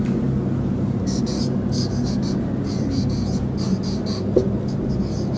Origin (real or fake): real